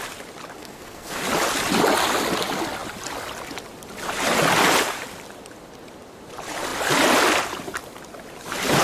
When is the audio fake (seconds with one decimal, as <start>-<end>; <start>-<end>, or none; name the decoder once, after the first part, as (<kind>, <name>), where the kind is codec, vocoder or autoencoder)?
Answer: 0.6-1.2 (codec, SNAC)